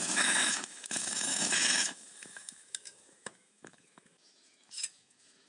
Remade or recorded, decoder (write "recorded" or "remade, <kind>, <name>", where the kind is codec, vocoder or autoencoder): remade, autoencoder, DAC-VAE